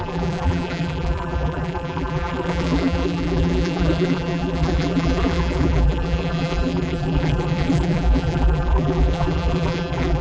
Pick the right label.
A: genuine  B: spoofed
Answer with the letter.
B